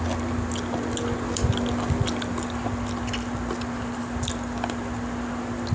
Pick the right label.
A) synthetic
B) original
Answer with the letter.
B